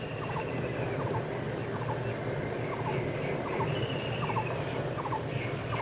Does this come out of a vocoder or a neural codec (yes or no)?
no